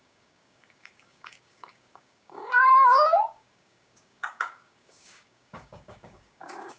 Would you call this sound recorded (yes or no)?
no